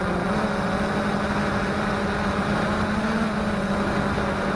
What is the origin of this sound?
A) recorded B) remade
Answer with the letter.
A